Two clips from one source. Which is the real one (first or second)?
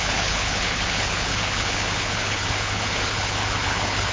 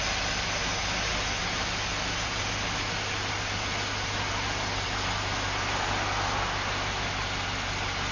second